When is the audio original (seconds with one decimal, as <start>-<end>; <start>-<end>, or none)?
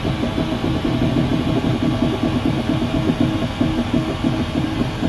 0.0-5.1